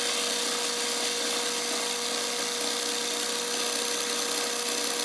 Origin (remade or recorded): recorded